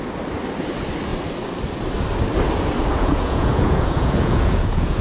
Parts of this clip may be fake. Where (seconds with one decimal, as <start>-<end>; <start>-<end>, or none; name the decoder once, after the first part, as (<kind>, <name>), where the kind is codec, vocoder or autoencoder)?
2.9-5.0 (vocoder, Vocos)